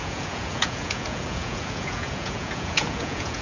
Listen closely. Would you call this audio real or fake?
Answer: fake